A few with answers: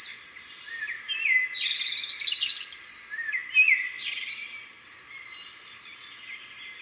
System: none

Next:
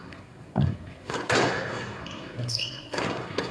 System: codec, SNAC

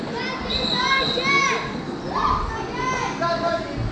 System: none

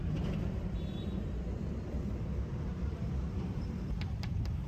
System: vocoder, BigVGAN v2